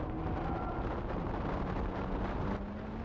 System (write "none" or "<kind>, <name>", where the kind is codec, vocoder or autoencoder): none